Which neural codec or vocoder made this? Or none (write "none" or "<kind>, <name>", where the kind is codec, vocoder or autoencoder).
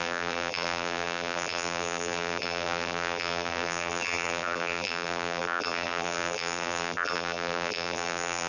vocoder, BigVGAN v2